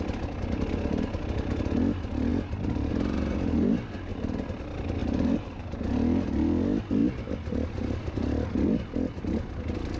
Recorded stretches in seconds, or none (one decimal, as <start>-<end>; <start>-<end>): 0.0-2.3; 2.9-4.1; 4.6-5.0; 5.6-10.0